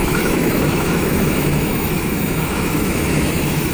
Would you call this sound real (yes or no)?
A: no